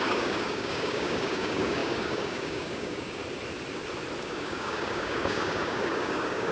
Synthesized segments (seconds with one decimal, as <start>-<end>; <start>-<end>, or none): 0.0-3.2; 4.2-6.5